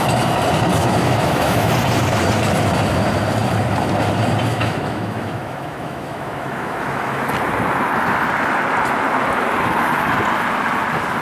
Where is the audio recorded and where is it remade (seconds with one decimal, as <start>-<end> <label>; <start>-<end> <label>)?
0.0-0.8 recorded; 0.8-1.7 remade; 1.7-4.5 recorded; 4.5-7.2 remade; 7.2-11.2 recorded